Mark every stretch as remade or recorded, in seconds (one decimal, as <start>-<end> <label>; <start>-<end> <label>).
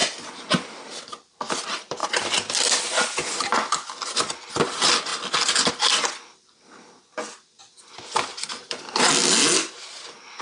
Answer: 0.0-8.3 recorded; 8.3-9.0 remade; 9.0-10.4 recorded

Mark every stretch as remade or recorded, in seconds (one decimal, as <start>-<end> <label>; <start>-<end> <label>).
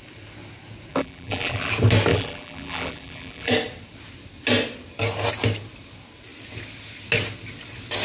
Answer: 0.0-0.9 recorded; 0.9-1.7 remade; 1.7-2.1 recorded; 2.1-3.5 remade; 3.5-8.0 recorded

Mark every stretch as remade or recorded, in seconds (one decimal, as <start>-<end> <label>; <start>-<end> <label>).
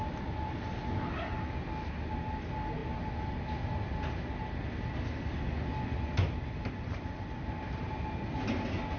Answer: 0.0-9.0 recorded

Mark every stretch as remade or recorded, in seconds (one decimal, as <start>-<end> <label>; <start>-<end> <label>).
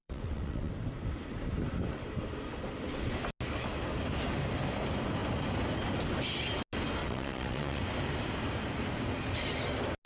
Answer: 0.0-0.7 remade; 0.7-7.0 recorded; 7.0-7.8 remade; 7.8-10.1 recorded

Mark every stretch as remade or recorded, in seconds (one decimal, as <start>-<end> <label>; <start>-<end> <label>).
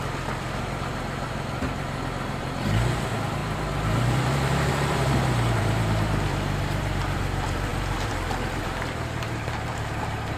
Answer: 0.0-10.4 remade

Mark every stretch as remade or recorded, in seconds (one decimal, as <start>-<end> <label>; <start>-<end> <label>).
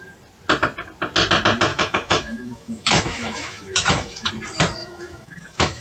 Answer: 0.0-1.7 recorded; 1.7-4.3 remade; 4.3-4.8 recorded; 4.8-5.8 remade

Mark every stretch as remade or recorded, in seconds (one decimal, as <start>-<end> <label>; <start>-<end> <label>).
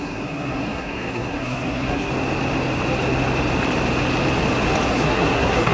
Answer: 0.0-2.1 remade; 2.1-4.9 recorded; 4.9-5.7 remade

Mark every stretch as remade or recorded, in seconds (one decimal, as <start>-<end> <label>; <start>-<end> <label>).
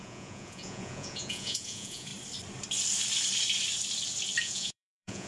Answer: 0.0-2.1 remade; 2.1-4.4 recorded; 4.4-5.3 remade